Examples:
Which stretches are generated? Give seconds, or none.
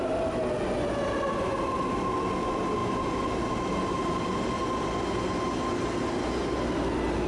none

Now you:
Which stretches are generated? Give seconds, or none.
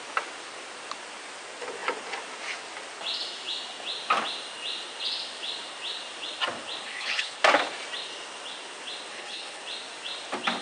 6.8-7.4; 9.1-9.6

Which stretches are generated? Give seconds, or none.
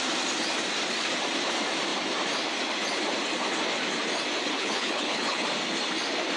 4.4-5.4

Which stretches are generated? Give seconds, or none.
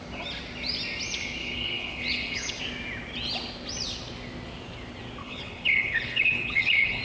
1.4-2.6; 5.2-7.0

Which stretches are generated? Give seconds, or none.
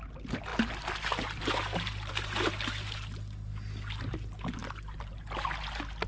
none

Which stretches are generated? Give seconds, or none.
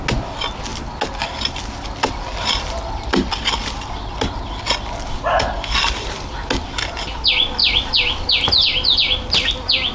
none